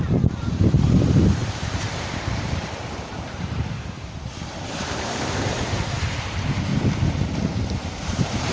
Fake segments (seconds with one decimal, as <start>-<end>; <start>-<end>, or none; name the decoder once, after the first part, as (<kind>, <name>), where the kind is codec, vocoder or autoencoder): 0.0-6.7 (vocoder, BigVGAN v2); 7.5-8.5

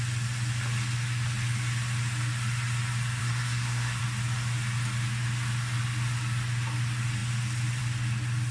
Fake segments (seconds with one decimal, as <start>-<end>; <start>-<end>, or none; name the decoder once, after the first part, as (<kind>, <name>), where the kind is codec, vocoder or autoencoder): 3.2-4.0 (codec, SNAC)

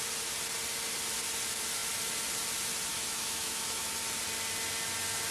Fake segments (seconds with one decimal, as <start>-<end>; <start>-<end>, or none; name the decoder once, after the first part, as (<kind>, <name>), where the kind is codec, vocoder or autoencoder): 2.9-3.9 (autoencoder, DAC-VAE)

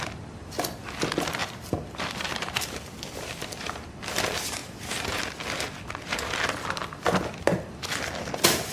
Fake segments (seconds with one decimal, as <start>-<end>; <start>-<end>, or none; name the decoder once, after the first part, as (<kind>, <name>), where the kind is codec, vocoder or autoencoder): 1.4-2.6 (vocoder, BigVGAN v2); 4.6-5.2

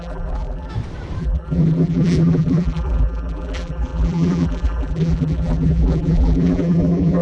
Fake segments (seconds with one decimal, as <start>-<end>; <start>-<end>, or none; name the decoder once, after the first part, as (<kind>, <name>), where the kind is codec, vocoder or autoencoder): 0.0-0.7 (vocoder, BigVGAN v2); 1.2-7.2

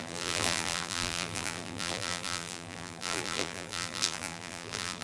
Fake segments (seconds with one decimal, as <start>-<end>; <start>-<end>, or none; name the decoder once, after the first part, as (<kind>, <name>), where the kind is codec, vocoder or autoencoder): 0.0-5.0 (vocoder, BigVGAN v2)

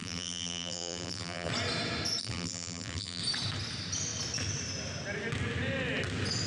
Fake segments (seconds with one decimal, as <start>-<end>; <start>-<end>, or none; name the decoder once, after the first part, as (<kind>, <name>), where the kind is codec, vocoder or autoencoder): 0.0-1.5 (vocoder, BigVGAN v2); 2.2-3.2